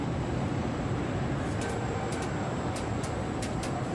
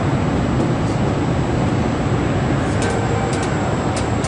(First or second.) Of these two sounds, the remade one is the first